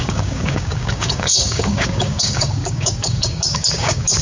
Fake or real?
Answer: fake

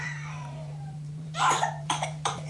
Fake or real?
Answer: fake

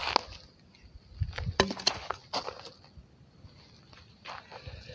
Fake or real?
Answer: real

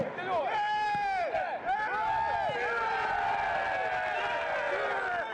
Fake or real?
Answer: real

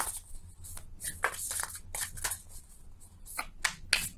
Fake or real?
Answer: real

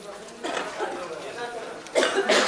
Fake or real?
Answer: real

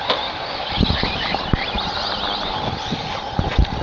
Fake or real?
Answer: real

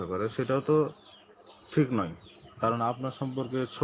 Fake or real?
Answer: real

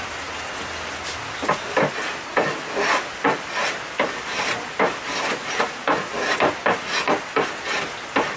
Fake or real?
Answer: real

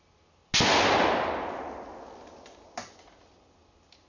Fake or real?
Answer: real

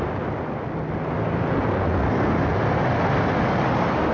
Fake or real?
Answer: real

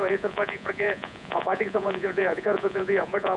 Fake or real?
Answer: fake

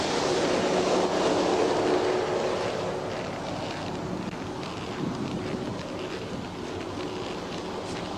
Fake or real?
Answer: real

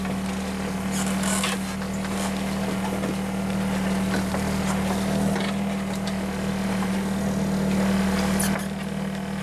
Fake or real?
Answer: real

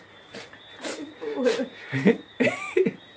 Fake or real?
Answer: real